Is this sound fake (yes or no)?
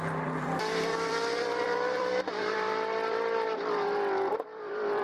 yes